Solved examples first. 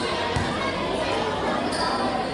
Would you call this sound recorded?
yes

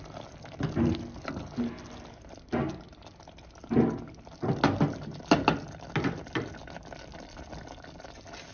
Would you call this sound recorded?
yes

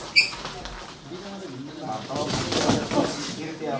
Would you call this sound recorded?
yes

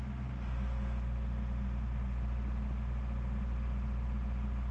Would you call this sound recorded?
yes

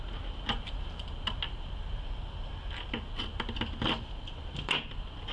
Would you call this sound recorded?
yes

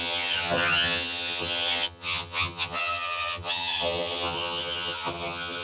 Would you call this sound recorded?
no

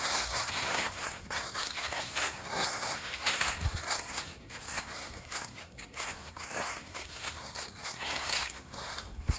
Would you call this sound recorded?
no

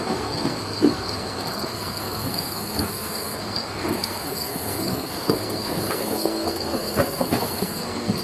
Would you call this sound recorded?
no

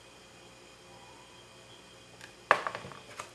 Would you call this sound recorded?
yes